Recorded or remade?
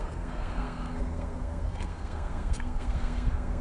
remade